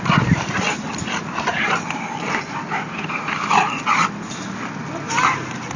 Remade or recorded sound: recorded